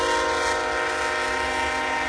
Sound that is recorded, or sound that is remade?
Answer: recorded